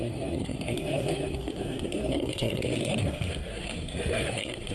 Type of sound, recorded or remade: remade